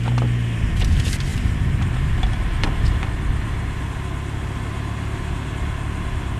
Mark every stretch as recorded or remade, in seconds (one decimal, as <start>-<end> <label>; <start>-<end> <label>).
0.0-1.3 recorded; 1.3-2.1 remade; 2.1-6.4 recorded